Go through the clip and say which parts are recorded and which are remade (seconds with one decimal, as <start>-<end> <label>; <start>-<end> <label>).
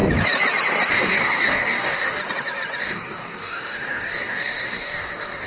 0.0-0.9 recorded; 0.9-2.2 remade; 2.2-2.8 recorded; 2.8-5.5 remade